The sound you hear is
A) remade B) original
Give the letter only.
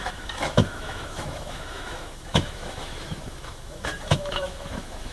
A